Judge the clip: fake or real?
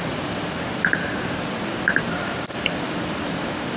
real